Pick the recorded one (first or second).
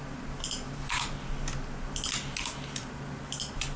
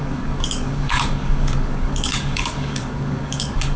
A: first